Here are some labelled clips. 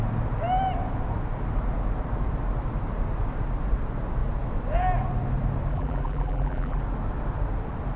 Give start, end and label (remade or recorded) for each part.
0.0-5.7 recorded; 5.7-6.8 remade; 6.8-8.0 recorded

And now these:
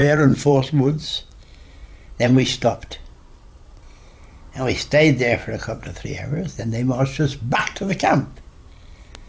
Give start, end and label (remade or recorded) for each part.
0.0-1.4 remade; 1.4-1.8 recorded; 1.8-4.2 remade; 4.2-9.3 recorded